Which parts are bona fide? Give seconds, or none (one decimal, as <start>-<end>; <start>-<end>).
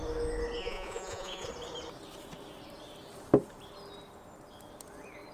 0.0-0.6; 1.5-5.3